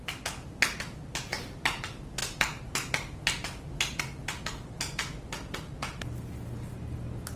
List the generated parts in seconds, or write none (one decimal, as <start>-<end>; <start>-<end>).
none